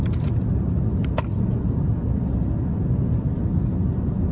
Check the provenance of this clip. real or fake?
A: real